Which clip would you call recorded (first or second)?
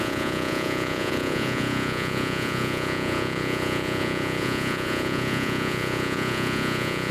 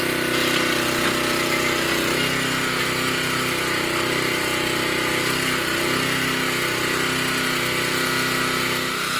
second